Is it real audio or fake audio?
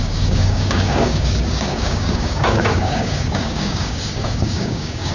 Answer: fake